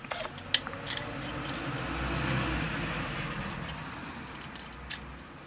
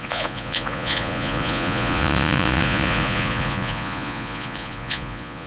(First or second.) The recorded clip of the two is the first